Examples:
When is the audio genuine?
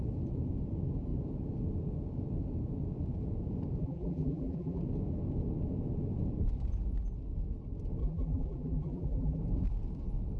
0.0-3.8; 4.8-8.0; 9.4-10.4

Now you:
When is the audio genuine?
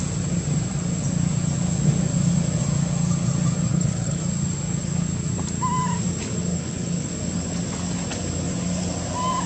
0.0-3.7; 4.2-6.5; 7.1-9.5